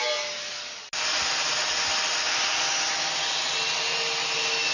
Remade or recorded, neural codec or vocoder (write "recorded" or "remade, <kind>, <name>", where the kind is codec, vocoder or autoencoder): recorded